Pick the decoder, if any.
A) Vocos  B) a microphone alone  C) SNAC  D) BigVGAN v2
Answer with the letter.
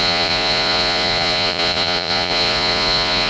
A